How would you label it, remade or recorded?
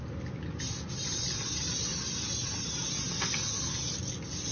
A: recorded